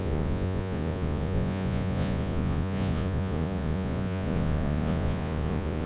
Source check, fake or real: fake